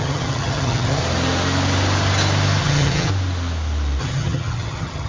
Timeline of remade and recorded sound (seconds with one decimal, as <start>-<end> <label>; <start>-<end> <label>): 0.0-1.0 remade; 1.0-2.6 recorded; 2.6-3.1 remade; 3.1-4.0 recorded; 4.0-5.1 remade